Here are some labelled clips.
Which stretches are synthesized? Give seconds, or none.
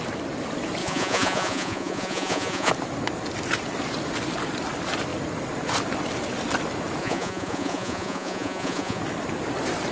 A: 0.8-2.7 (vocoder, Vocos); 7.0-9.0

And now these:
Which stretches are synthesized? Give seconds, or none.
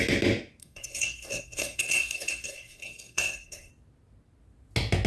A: 0.6-3.7 (codec, SNAC)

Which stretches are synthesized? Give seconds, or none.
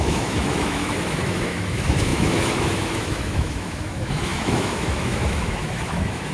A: 0.0-6.3 (autoencoder, DAC-VAE)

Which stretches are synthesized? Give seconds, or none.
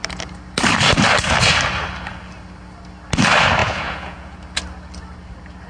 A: 3.6-4.4 (vocoder, Vocos)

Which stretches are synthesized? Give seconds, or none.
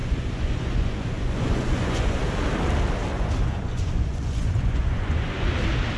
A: 0.0-2.2 (vocoder, Vocos); 3.1-5.5